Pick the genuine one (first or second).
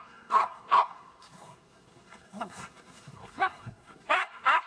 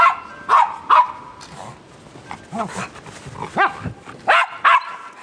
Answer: second